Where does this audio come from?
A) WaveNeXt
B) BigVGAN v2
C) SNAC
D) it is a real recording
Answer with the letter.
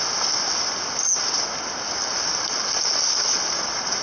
D